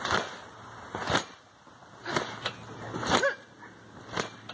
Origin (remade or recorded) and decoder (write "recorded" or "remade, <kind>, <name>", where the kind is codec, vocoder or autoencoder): recorded